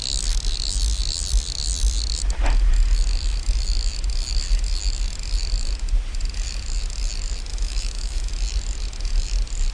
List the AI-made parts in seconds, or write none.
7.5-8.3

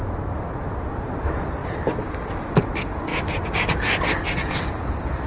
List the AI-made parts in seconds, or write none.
none

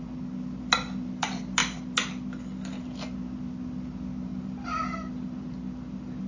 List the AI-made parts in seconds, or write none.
none

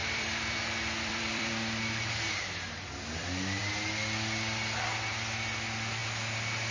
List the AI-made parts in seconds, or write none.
0.0-2.1

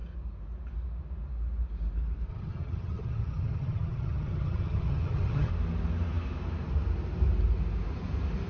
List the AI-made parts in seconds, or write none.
2.3-5.5

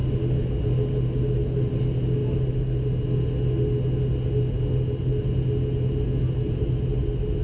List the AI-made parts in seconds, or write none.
none

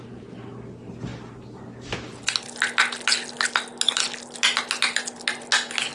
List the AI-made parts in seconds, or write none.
none

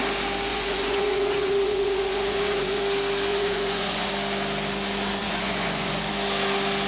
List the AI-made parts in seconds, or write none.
0.5-2.8; 3.3-4.1; 5.2-6.1